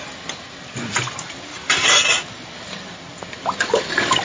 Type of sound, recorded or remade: recorded